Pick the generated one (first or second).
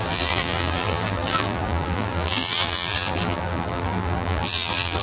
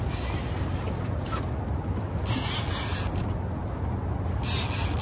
first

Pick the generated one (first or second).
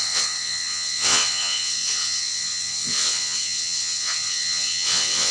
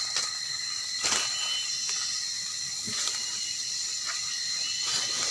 first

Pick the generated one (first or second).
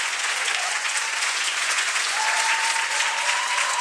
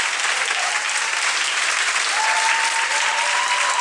first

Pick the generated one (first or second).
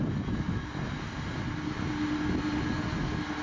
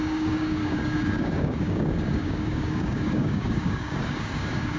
second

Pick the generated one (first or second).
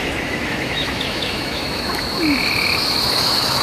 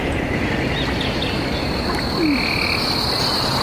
first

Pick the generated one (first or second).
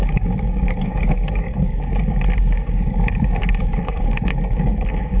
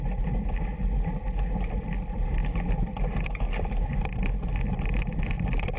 first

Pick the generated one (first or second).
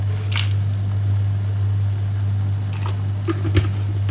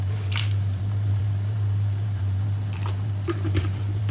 second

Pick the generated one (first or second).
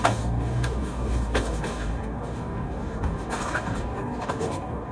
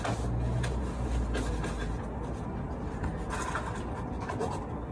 first